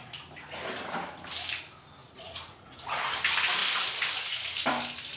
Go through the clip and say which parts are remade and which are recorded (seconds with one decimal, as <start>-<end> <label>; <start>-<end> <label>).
0.0-2.0 recorded; 2.0-3.0 remade; 3.0-5.2 recorded